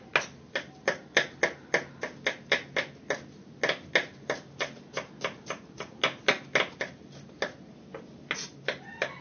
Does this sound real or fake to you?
real